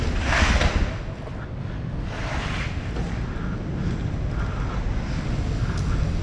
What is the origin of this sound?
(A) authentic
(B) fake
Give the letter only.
A